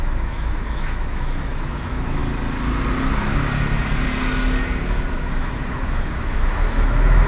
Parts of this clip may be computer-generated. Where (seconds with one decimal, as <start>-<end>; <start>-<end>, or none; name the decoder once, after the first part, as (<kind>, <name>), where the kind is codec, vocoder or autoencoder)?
0.0-2.2 (autoencoder, DAC-VAE); 5.1-7.3